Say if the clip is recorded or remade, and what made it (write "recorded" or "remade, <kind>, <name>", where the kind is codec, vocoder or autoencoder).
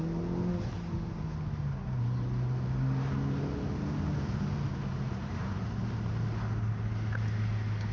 recorded